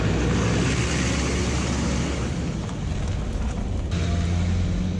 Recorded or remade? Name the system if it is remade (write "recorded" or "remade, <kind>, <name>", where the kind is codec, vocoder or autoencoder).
recorded